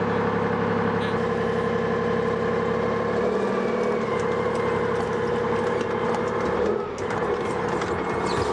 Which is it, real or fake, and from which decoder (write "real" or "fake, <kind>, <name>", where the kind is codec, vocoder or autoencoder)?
real